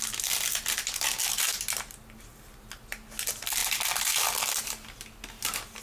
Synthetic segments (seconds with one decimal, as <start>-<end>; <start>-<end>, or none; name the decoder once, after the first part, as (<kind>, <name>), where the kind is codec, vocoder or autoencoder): none